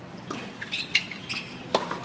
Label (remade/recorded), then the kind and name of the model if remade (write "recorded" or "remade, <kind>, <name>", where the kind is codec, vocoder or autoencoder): recorded